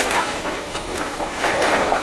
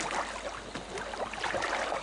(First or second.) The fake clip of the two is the first